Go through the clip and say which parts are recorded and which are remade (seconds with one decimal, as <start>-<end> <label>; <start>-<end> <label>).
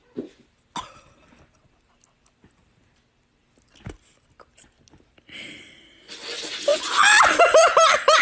0.0-8.2 recorded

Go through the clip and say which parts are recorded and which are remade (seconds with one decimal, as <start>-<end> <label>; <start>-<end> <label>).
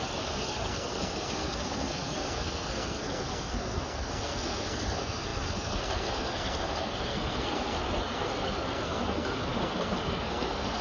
0.0-10.8 remade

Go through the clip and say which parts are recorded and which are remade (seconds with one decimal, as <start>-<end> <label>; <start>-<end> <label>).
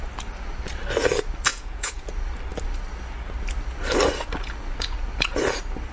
0.0-1.5 recorded; 1.5-2.1 remade; 2.1-5.9 recorded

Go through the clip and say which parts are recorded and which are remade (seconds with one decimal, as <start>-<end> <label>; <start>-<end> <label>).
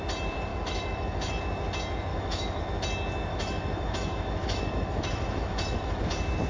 0.0-0.5 recorded; 0.5-1.4 remade; 1.4-2.1 recorded; 2.1-2.6 remade; 2.6-3.3 recorded; 3.3-6.0 remade; 6.0-6.5 recorded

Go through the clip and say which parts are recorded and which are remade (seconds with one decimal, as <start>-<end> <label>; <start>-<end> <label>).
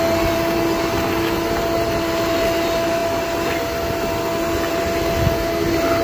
0.0-6.0 recorded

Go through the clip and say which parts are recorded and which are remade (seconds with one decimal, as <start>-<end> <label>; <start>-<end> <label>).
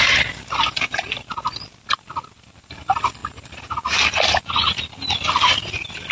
0.0-3.2 remade; 3.2-4.8 recorded; 4.8-6.1 remade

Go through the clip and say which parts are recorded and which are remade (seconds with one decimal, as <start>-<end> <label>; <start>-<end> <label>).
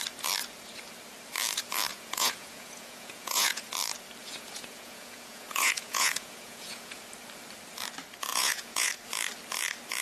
0.0-1.9 recorded; 1.9-3.7 remade; 3.7-4.2 recorded; 4.2-7.0 remade; 7.0-8.3 recorded; 8.3-8.9 remade; 8.9-10.0 recorded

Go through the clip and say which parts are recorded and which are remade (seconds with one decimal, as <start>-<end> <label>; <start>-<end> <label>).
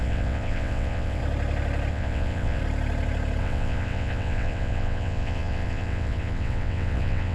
0.0-1.2 remade; 1.2-1.9 recorded; 1.9-2.6 remade; 2.6-3.4 recorded; 3.4-7.3 remade